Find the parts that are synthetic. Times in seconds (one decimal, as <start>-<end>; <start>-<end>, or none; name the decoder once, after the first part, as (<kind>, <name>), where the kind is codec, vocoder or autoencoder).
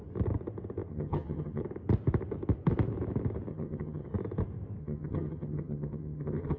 0.9-1.6 (vocoder, HiFi-GAN); 3.5-4.1; 4.8-6.6